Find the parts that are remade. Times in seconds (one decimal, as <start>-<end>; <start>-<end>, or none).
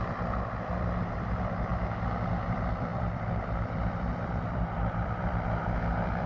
0.0-1.7; 2.3-6.3